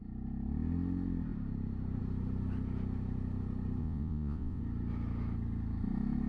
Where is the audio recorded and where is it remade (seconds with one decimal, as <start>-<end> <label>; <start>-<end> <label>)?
0.0-3.8 recorded; 3.8-4.6 remade; 4.6-6.3 recorded